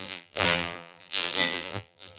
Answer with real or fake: fake